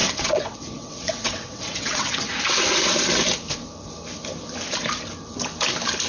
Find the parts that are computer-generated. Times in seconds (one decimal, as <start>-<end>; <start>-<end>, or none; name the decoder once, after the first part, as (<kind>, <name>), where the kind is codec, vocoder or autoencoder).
0.0-2.3 (vocoder, WaveNeXt)